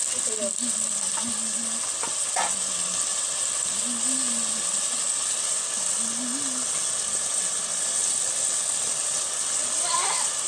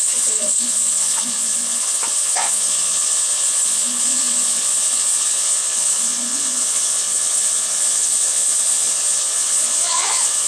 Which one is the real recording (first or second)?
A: first